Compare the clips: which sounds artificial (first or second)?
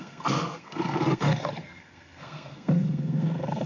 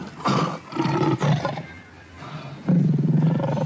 first